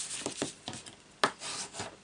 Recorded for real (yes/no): yes